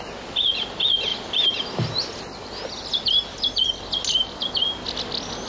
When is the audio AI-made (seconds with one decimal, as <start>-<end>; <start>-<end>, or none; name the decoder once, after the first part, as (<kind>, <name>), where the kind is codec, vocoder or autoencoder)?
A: none